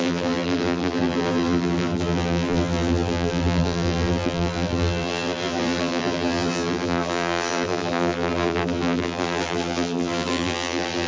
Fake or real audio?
fake